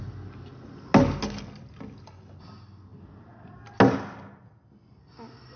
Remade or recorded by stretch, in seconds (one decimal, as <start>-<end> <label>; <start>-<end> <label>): 0.0-5.6 recorded